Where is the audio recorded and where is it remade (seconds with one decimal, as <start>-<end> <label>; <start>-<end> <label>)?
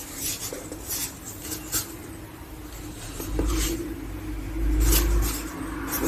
0.0-6.1 recorded